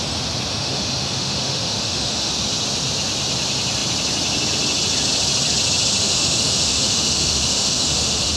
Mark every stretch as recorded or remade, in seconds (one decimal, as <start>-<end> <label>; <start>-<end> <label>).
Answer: 0.0-0.5 recorded; 0.5-2.3 remade; 2.3-6.0 recorded; 6.0-8.4 remade

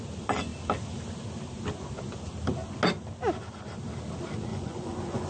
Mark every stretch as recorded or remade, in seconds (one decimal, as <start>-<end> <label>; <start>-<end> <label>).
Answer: 0.0-4.5 recorded; 4.5-5.3 remade

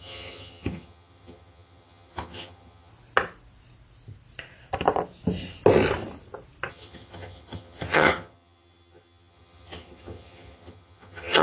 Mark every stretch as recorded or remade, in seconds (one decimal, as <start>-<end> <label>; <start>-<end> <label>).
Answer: 0.0-2.9 remade; 2.9-6.7 recorded; 6.7-11.4 remade